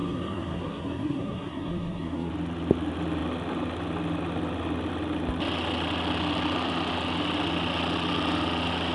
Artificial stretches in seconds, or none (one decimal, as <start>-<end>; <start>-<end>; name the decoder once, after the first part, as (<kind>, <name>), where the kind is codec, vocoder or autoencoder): 0.0-2.3 (codec, SNAC)